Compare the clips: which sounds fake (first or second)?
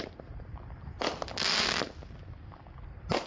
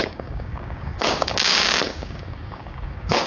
second